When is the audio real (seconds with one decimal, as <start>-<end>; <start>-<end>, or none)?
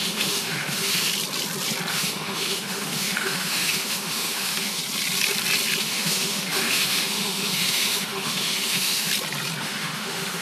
1.1-1.9; 4.8-5.8; 9.1-9.6